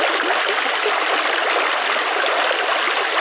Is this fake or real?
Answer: real